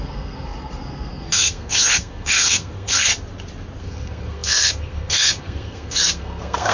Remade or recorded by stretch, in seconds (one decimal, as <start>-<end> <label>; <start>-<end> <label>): 0.0-3.1 remade; 3.1-3.8 recorded; 3.8-6.7 remade